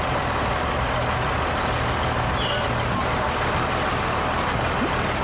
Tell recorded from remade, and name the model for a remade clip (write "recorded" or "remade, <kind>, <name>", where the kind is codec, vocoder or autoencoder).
recorded